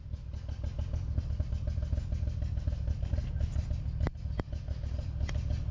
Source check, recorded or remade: recorded